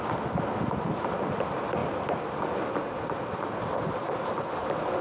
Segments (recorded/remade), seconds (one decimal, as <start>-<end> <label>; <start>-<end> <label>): 0.0-5.0 recorded